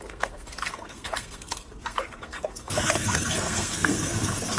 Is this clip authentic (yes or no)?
no